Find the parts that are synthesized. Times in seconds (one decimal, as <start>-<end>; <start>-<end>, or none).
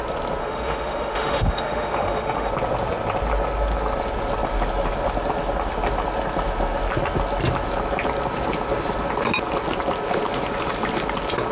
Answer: 0.4-2.5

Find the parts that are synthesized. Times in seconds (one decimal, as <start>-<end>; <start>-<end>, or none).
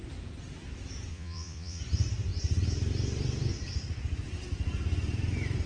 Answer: 1.1-1.8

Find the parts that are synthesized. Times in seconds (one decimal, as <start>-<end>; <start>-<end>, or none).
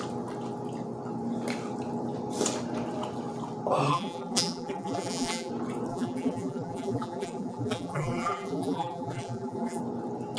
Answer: 3.9-5.5; 5.9-9.8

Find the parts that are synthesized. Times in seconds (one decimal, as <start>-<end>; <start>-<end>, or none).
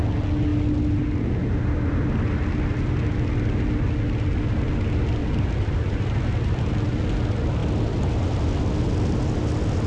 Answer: 5.2-6.6